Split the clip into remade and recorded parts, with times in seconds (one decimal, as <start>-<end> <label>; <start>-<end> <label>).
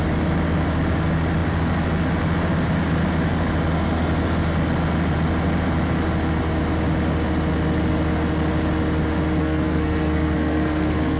0.0-9.4 recorded; 9.4-11.2 remade